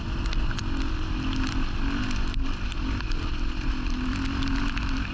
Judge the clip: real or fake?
real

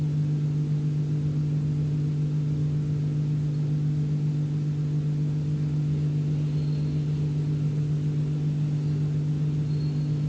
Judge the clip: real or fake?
real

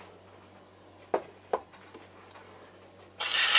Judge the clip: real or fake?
real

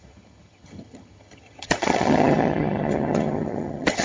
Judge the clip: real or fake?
fake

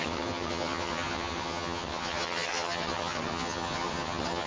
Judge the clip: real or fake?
fake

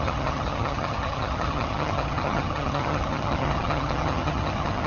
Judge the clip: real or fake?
fake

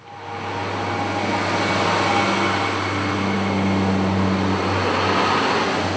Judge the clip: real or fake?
real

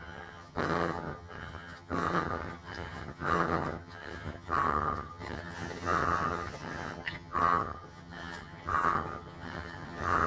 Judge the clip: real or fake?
fake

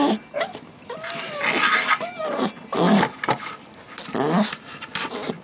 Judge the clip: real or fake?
real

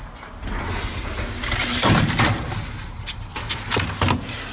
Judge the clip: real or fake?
real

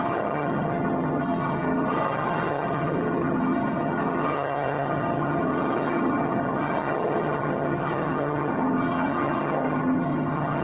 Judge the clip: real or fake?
fake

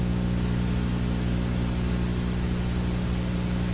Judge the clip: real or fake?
real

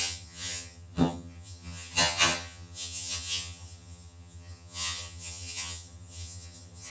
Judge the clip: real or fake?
fake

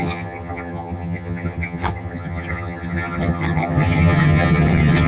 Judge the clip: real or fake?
fake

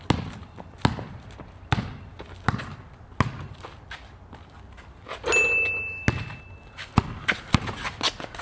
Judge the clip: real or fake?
real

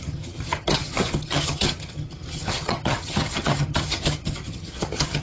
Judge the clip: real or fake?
fake